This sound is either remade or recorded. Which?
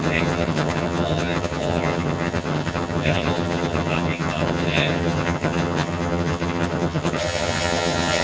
remade